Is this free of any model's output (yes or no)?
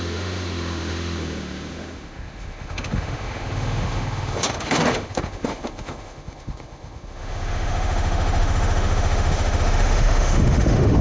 no